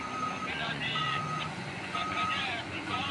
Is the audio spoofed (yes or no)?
yes